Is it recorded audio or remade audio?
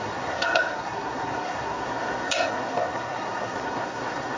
remade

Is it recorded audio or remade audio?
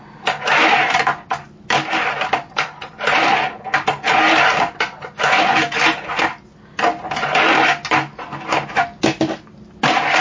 recorded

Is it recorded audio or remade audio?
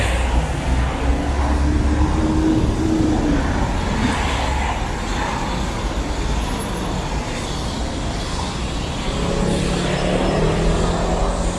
recorded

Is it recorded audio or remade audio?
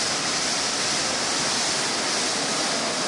recorded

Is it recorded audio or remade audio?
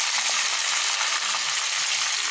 recorded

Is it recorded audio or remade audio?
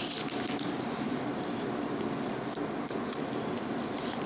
recorded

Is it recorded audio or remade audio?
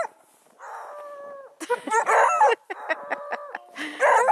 recorded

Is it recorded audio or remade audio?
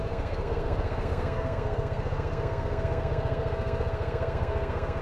remade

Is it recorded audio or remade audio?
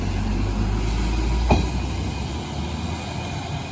recorded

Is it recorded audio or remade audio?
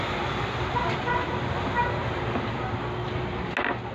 recorded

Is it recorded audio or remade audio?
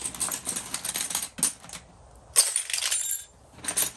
recorded